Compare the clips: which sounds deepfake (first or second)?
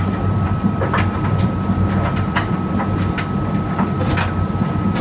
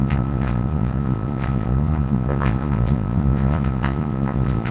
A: second